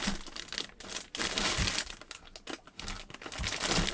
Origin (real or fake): real